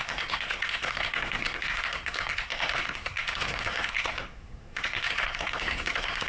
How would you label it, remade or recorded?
remade